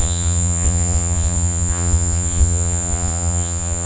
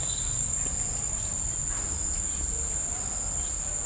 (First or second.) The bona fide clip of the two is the second